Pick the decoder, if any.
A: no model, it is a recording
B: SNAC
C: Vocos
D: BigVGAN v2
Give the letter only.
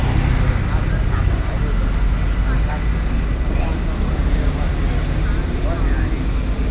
A